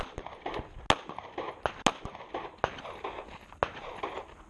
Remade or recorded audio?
recorded